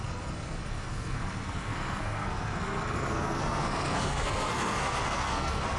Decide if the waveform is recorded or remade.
remade